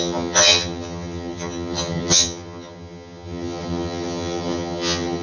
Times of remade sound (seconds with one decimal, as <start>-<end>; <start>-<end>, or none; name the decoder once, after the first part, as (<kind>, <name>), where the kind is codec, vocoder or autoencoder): 0.0-5.2 (vocoder, HiFi-GAN)